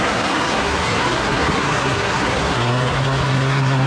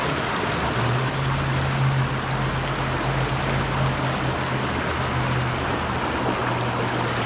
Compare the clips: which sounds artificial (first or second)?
first